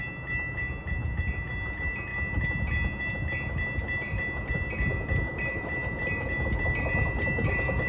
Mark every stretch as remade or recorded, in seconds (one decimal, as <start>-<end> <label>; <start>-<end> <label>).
0.0-7.9 recorded